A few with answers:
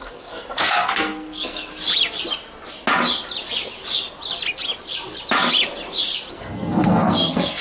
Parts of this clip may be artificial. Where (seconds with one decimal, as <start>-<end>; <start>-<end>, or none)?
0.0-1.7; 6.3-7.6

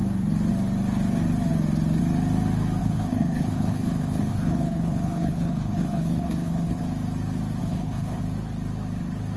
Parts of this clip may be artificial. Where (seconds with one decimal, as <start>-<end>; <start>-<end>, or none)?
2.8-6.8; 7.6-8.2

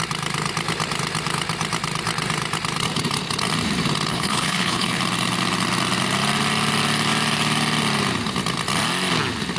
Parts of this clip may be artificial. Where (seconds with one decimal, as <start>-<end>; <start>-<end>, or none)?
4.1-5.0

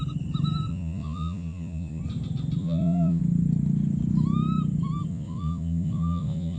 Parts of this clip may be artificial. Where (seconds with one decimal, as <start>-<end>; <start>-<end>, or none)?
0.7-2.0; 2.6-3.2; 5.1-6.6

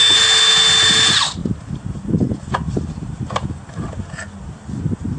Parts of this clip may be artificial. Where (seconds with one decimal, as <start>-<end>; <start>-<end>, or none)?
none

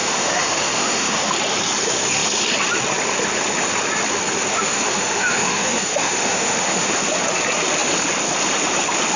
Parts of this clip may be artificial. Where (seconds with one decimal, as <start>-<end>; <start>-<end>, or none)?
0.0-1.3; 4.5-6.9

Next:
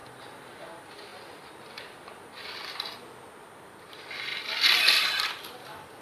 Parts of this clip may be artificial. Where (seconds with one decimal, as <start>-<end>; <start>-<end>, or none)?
none